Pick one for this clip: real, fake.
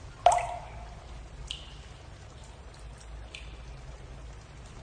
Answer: real